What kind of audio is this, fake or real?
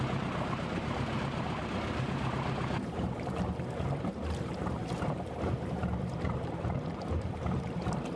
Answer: fake